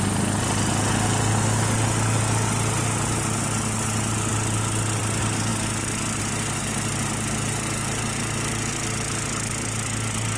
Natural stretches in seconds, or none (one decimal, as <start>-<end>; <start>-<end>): 0.0-10.4